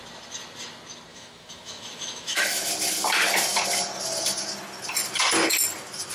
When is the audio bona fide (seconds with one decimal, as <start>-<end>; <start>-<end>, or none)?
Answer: 0.0-1.1; 2.7-6.1